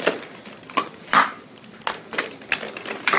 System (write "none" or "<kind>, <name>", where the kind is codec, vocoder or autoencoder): none